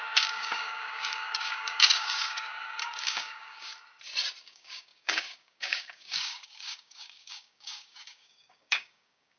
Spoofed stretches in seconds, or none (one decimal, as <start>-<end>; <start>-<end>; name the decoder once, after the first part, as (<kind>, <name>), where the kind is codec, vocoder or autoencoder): 0.0-3.7 (codec, DAC); 4.4-9.4